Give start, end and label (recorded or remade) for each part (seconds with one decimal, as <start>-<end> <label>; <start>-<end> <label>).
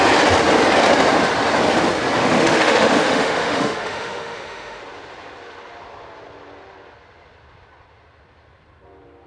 0.0-2.2 recorded; 2.2-4.8 remade; 4.8-9.3 recorded